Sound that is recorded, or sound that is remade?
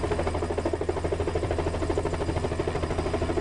recorded